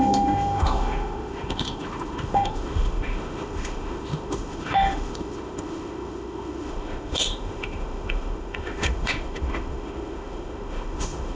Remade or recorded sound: remade